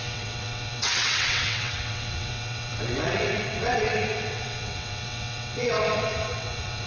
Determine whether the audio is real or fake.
fake